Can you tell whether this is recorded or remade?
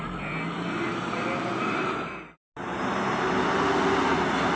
recorded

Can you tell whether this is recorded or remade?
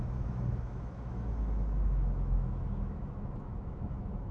remade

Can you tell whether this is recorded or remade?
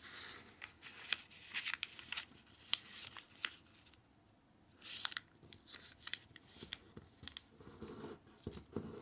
recorded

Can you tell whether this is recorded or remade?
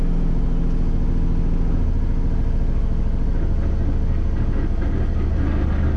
recorded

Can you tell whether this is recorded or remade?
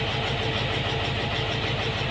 recorded